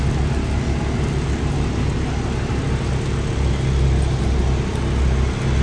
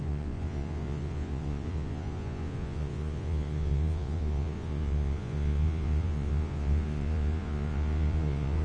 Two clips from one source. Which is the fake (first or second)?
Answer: second